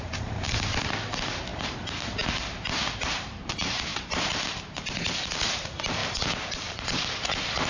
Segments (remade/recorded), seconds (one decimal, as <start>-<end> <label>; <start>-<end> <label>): 0.0-7.7 remade